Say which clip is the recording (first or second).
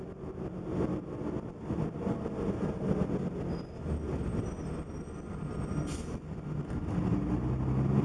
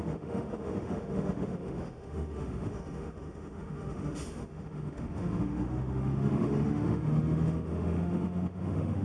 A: first